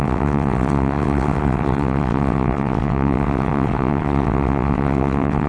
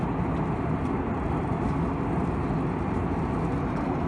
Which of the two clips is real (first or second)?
second